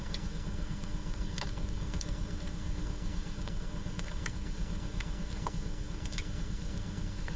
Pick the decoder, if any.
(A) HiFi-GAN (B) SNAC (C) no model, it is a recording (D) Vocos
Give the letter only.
B